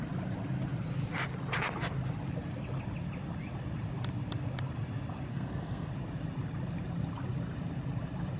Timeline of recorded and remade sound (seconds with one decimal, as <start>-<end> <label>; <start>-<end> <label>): 0.0-5.3 recorded; 5.3-5.9 remade; 5.9-8.4 recorded